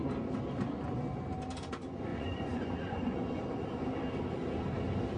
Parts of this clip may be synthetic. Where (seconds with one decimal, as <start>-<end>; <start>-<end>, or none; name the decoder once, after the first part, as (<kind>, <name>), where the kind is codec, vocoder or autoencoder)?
2.1-3.4 (vocoder, Vocos)